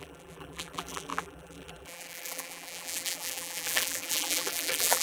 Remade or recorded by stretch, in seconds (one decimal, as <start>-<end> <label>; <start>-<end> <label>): 0.0-5.0 remade